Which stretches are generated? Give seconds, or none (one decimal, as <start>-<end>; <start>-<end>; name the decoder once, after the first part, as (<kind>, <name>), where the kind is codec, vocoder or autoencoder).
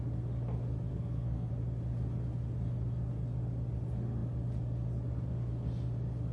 0.9-1.5 (codec, SNAC)